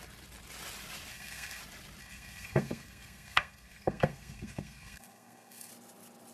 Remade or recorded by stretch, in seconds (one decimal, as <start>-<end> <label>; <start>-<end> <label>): 0.0-1.1 recorded; 1.1-1.6 remade; 1.6-2.0 recorded; 2.0-5.7 remade; 5.7-6.3 recorded